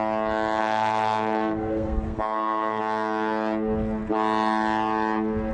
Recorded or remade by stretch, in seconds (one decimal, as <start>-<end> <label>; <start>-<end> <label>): 0.0-0.6 recorded; 0.6-2.8 remade; 2.8-5.5 recorded